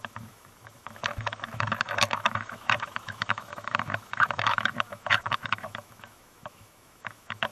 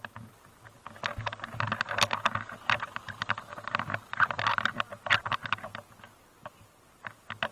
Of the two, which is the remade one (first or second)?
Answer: first